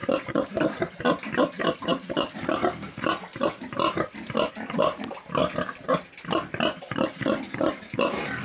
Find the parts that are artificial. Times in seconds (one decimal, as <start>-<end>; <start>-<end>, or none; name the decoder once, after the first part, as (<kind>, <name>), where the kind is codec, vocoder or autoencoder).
5.4-6.5 (vocoder, BigVGAN v2)